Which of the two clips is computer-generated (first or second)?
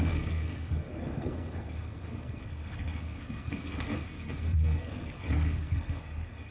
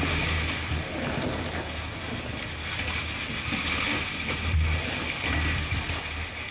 first